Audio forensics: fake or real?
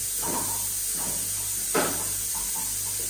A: real